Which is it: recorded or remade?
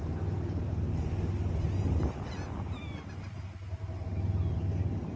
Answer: recorded